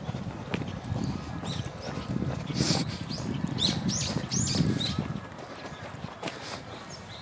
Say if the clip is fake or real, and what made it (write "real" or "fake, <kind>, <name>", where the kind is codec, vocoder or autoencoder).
real